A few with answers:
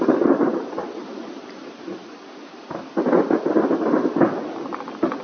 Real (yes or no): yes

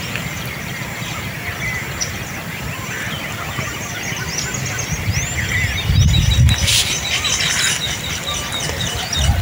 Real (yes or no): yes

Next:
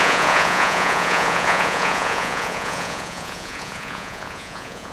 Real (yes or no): no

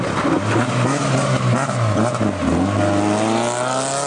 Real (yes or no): yes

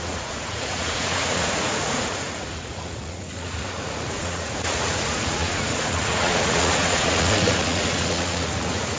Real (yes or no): no